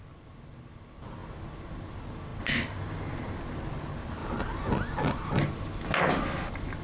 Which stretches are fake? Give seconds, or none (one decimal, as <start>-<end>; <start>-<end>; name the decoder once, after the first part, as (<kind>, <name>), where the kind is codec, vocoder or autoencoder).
none